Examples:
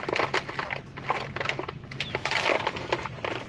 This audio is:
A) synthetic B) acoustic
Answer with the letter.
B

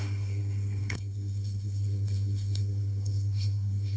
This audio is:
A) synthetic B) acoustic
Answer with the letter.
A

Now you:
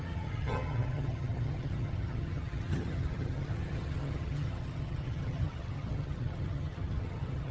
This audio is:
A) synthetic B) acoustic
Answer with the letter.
A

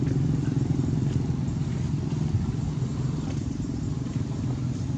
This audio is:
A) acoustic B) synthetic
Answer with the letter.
A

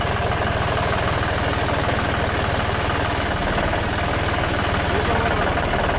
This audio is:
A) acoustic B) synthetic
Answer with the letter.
A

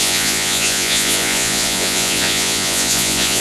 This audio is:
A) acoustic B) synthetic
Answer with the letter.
B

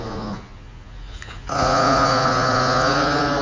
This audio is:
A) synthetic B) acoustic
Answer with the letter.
A